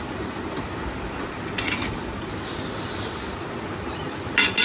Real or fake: real